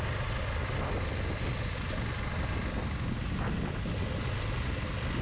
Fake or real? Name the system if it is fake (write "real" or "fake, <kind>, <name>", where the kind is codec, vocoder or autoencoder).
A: real